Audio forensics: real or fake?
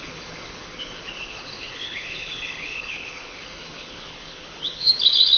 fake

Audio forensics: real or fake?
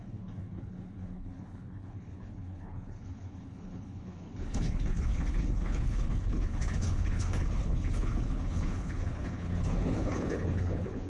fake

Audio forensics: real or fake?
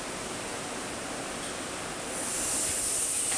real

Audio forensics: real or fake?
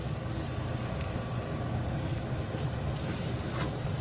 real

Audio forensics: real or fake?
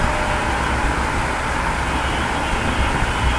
real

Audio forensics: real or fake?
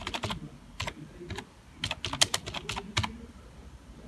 real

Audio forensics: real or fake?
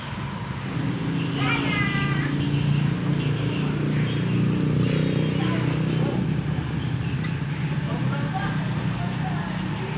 real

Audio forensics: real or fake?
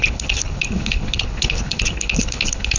fake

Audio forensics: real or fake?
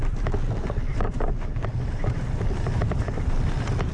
real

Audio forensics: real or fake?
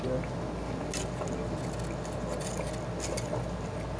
real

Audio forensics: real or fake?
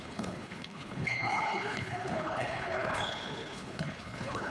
fake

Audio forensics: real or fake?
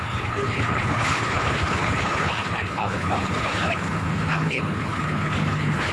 fake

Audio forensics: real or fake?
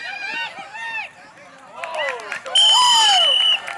real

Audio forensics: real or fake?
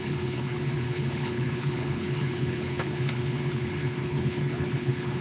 fake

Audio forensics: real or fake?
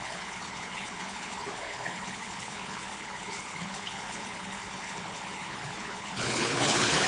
fake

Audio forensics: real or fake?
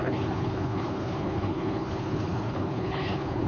fake